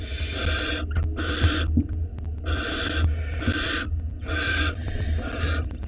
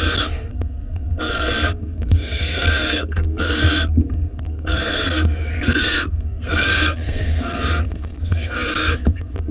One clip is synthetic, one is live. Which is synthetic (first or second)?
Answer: second